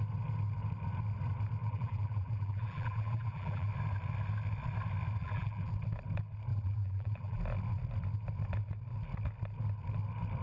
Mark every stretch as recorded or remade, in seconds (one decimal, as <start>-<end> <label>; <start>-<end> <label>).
0.0-1.6 recorded; 1.6-3.7 remade; 3.7-5.2 recorded; 5.2-5.7 remade; 5.7-6.5 recorded; 6.5-7.4 remade; 7.4-10.4 recorded